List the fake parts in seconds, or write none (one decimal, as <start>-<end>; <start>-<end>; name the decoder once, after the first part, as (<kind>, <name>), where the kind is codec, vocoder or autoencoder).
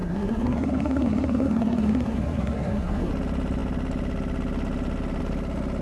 0.0-3.1 (codec, SNAC)